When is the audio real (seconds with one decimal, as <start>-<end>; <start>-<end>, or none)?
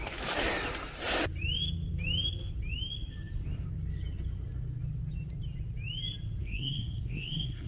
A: 0.0-6.4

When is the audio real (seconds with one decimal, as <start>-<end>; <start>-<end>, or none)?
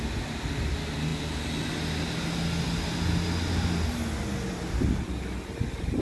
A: 0.0-6.0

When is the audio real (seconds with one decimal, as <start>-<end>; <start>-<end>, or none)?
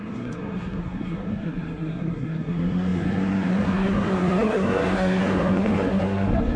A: none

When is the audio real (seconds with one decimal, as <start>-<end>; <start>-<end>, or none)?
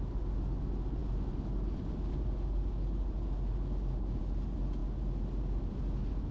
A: 0.0-6.3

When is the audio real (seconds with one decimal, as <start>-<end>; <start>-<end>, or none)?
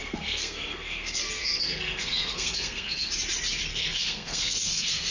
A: 3.1-3.7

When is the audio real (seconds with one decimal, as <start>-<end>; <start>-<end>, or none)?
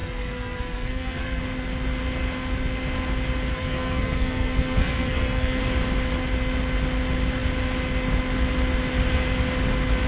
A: 1.4-3.5; 5.6-10.1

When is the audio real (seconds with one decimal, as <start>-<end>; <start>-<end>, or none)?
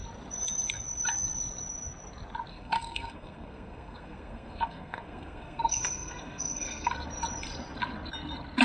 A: 0.0-2.5; 6.9-8.6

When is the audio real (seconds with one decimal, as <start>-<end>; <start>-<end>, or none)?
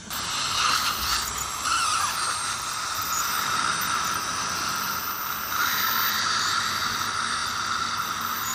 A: 0.0-8.5